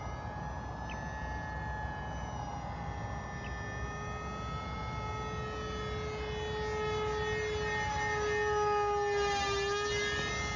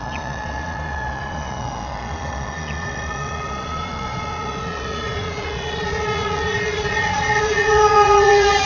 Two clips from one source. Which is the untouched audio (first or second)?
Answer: first